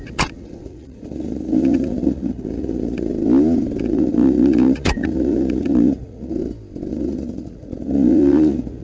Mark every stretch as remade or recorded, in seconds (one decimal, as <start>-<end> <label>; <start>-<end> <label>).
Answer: 0.0-3.1 remade; 3.1-3.8 recorded; 3.8-6.4 remade; 6.4-6.9 recorded; 6.9-8.8 remade